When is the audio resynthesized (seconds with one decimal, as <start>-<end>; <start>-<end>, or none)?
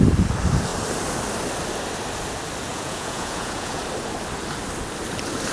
2.7-3.8